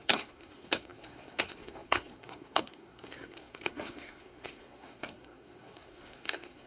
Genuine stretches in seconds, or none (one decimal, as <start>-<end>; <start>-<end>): none